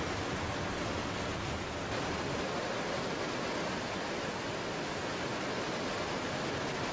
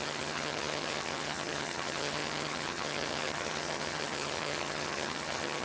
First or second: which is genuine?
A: first